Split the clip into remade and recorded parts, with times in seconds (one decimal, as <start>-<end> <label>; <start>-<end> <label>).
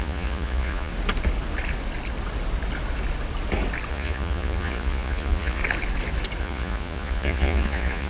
0.0-0.9 remade; 0.9-3.9 recorded; 3.9-5.6 remade; 5.6-6.4 recorded; 6.4-8.1 remade